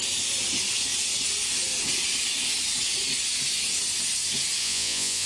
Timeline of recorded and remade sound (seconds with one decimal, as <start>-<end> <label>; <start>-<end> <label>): 0.0-4.6 recorded; 4.6-5.3 remade